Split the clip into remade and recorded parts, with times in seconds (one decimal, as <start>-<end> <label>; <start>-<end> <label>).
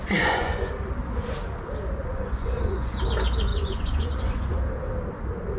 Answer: 0.0-0.7 remade; 0.7-2.0 recorded; 2.0-3.0 remade; 3.0-3.5 recorded; 3.5-4.6 remade; 4.6-5.6 recorded